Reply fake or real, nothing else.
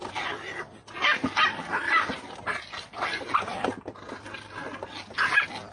real